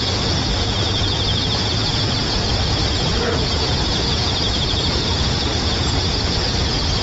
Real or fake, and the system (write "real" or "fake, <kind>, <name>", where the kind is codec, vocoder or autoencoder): fake, vocoder, Vocos